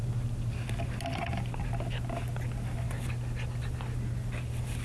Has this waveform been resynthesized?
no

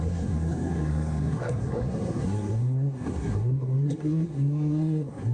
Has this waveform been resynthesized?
yes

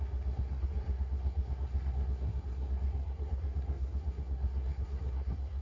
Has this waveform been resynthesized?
yes